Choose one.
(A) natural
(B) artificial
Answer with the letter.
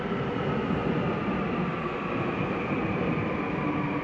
A